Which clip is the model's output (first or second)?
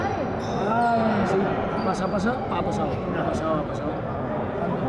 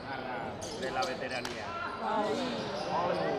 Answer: second